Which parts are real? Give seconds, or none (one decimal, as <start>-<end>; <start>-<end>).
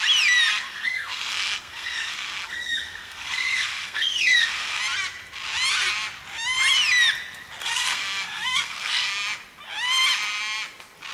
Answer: 0.0-0.5; 4.8-7.6; 9.1-11.1